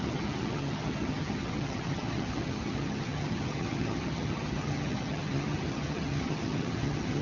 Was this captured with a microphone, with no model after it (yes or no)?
no